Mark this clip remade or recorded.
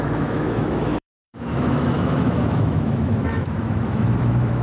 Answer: remade